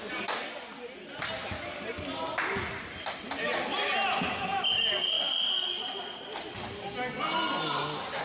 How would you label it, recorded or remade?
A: recorded